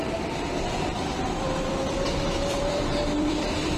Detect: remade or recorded remade